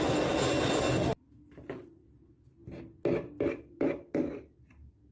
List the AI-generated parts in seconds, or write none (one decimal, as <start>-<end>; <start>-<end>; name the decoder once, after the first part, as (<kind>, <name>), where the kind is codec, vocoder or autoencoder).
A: none